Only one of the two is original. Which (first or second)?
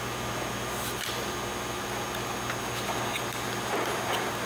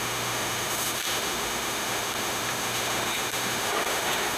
first